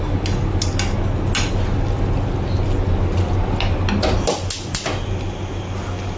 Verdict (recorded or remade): recorded